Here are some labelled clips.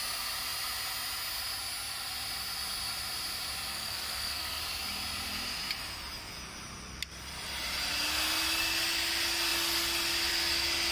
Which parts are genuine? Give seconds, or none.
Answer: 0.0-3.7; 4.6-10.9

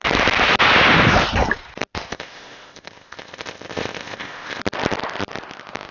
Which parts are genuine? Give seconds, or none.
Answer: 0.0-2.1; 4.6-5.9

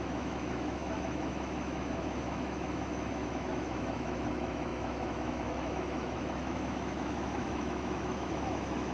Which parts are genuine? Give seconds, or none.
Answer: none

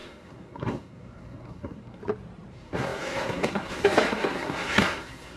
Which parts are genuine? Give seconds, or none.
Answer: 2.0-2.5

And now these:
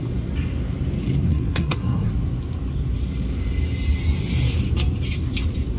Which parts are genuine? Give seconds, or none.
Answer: 0.0-1.3; 2.1-5.8